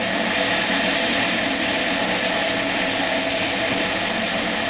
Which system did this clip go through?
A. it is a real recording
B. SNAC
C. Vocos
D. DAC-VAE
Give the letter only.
A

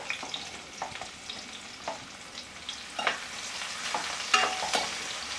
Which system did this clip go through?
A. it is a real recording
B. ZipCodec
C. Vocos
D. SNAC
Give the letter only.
A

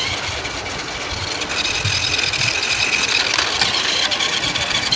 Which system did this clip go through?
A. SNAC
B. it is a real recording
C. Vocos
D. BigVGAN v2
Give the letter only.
B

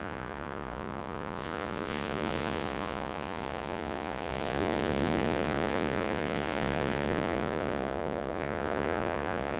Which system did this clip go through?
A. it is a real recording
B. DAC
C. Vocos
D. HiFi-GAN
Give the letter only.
C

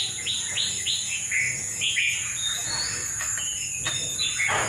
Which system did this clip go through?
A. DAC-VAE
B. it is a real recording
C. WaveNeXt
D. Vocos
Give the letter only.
D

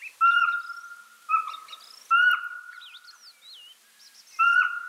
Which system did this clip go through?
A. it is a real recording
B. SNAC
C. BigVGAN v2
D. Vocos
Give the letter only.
A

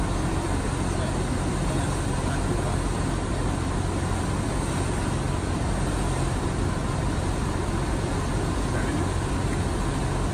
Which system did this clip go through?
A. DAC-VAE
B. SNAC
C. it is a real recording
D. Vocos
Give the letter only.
C